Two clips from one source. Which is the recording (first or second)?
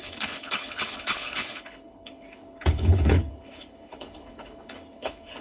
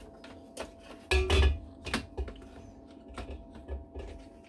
second